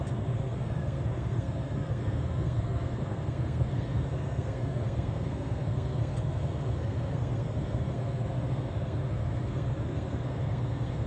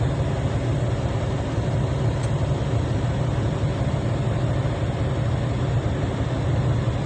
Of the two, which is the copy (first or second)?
first